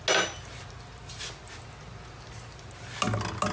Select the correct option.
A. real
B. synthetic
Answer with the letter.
A